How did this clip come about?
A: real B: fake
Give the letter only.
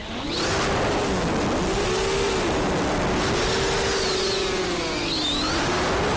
A